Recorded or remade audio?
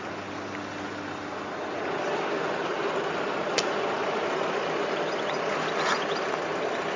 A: recorded